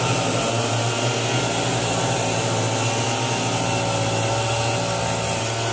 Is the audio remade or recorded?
recorded